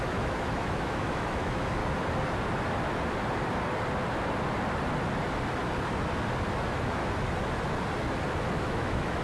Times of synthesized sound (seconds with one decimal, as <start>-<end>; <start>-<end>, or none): 0.0-1.8; 6.6-7.0; 8.6-9.2